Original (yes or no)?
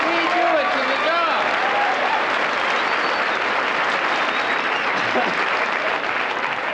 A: yes